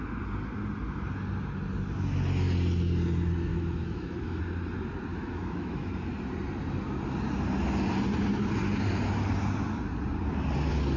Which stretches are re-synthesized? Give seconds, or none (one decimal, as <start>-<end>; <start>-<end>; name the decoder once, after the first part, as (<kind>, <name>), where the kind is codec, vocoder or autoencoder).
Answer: 3.5-4.4 (autoencoder, DAC-VAE); 5.1-5.9